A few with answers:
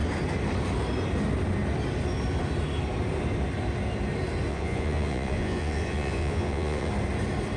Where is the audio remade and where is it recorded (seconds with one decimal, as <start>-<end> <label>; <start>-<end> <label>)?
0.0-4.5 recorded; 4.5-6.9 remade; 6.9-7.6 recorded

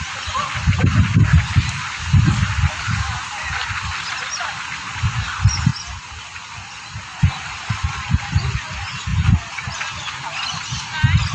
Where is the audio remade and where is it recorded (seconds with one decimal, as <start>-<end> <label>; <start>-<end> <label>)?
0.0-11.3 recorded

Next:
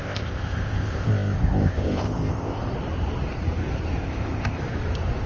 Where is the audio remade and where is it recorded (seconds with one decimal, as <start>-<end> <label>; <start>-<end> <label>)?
0.0-2.6 remade; 2.6-4.0 recorded; 4.0-4.6 remade; 4.6-5.3 recorded

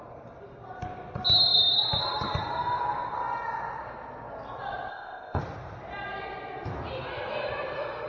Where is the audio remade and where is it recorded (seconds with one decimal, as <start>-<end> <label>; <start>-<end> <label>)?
0.0-4.9 recorded; 4.9-5.4 remade; 5.4-8.1 recorded

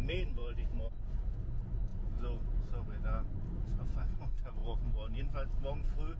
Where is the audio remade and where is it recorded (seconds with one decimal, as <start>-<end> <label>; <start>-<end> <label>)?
0.0-0.4 recorded; 0.4-1.4 remade; 1.4-1.9 recorded; 1.9-2.6 remade; 2.6-6.2 recorded

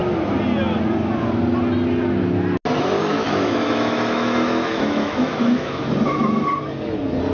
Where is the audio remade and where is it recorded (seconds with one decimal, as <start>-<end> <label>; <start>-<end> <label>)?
0.0-3.1 recorded; 3.1-5.9 remade; 5.9-7.3 recorded

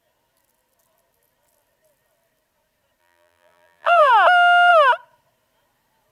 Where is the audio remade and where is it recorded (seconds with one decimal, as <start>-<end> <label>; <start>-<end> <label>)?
0.0-3.0 recorded; 3.0-4.1 remade; 4.1-6.1 recorded